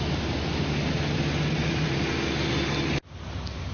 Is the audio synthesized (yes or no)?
no